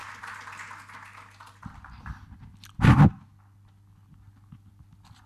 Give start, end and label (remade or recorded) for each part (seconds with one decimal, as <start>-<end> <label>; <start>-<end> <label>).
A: 0.0-5.3 recorded